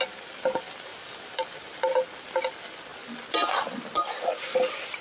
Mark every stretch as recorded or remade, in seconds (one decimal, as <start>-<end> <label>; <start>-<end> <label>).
0.0-5.0 recorded